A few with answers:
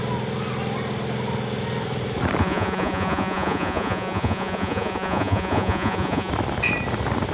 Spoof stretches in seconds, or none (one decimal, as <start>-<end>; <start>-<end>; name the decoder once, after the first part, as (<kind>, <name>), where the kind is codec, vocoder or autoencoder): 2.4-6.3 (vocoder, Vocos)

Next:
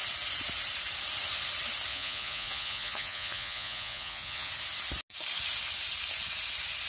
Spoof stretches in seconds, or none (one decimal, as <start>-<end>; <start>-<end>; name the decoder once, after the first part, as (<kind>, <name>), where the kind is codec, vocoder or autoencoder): 1.9-4.5 (vocoder, Vocos)

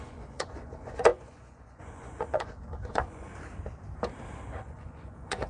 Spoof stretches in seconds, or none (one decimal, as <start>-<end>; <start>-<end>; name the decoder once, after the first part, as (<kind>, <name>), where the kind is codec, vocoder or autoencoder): 0.0-3.3 (vocoder, Vocos); 4.6-5.5

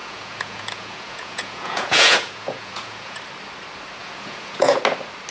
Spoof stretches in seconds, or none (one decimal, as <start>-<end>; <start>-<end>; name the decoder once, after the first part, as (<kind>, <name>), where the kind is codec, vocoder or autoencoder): 0.0-3.2 (vocoder, Vocos); 4.0-4.8

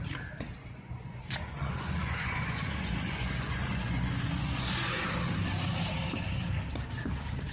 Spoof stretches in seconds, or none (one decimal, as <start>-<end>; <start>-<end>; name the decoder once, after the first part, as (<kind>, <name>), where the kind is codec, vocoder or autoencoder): 0.6-5.1 (vocoder, Vocos)

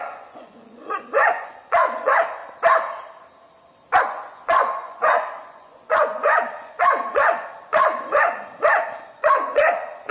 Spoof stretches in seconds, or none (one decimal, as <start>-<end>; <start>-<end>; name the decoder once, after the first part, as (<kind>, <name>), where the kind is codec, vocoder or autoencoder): 0.0-2.4 (vocoder, Vocos); 4.0-10.1

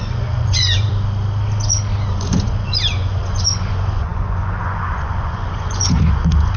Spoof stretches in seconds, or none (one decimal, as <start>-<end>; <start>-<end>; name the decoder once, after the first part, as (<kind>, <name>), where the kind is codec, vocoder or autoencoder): 0.0-0.9 (vocoder, Vocos); 2.1-6.6

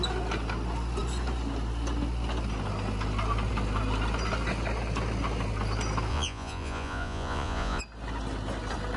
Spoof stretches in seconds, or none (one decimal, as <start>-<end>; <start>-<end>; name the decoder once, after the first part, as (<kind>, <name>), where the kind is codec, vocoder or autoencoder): 6.1-7.8 (vocoder, Vocos)